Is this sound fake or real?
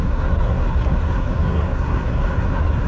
fake